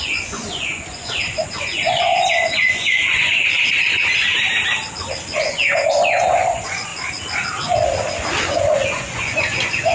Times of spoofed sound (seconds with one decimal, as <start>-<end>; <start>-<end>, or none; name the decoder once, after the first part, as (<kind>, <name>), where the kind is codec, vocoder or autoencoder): 0.0-3.6 (vocoder, Vocos); 5.4-6.9; 8.5-9.9